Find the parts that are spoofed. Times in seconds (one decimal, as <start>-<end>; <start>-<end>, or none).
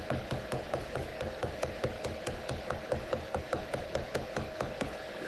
0.0-5.3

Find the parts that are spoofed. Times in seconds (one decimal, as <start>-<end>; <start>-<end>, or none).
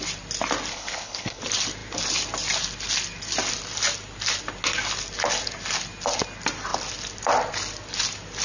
0.7-1.4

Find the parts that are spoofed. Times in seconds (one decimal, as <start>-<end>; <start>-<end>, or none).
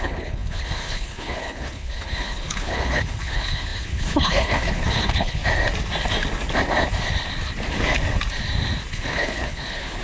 0.0-5.4; 8.9-10.0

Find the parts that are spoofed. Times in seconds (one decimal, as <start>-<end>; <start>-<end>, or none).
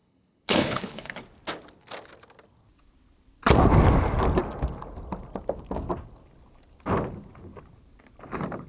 0.0-1.2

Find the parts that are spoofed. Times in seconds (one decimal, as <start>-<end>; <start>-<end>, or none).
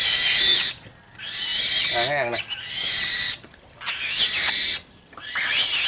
none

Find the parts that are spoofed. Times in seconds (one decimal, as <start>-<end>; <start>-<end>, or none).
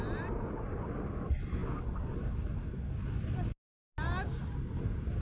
none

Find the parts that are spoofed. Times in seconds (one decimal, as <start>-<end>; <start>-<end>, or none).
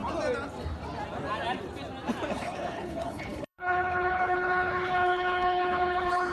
2.3-6.3